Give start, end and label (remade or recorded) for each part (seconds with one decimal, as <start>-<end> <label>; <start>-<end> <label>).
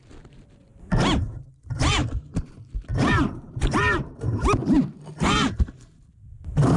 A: 0.0-0.7 recorded; 0.7-1.6 remade; 1.6-2.0 recorded; 2.0-2.5 remade; 2.5-2.9 recorded; 2.9-6.0 remade; 6.0-6.8 recorded